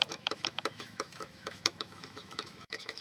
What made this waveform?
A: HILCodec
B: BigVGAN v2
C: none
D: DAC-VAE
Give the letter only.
D